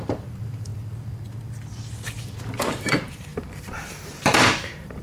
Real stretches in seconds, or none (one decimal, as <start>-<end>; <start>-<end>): 0.7-2.2